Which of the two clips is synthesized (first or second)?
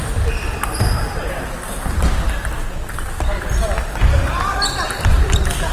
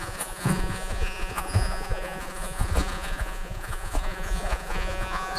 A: second